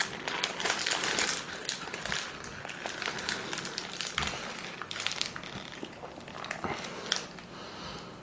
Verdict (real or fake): real